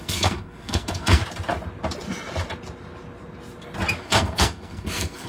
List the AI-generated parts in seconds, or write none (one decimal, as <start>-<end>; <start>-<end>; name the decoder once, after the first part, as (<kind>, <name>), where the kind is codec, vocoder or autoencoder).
0.0-1.2 (codec, SNAC); 4.0-5.3